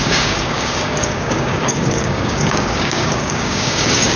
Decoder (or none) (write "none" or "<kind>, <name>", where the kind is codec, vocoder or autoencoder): codec, DAC